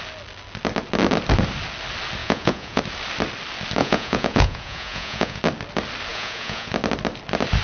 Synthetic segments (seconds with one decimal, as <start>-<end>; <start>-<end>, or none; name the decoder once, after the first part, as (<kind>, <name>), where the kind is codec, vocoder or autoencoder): 2.2-2.8 (vocoder, Vocos); 3.8-5.4; 6.1-6.7